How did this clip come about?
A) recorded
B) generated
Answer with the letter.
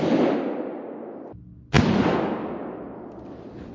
A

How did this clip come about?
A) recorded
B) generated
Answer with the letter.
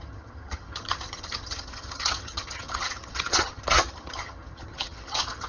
B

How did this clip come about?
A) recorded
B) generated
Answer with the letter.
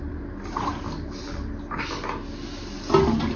A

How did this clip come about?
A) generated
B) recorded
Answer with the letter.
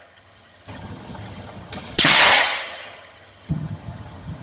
A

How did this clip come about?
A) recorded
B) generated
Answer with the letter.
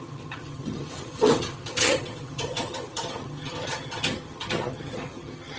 B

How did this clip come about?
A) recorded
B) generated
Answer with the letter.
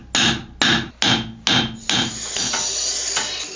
A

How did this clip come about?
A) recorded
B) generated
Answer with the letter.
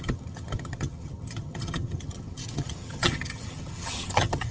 B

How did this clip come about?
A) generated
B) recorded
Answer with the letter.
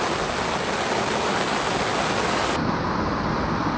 B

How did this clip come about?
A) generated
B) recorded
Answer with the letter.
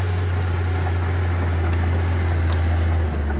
B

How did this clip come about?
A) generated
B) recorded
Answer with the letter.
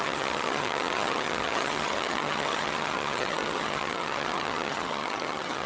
A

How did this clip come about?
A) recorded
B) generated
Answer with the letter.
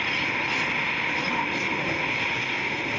A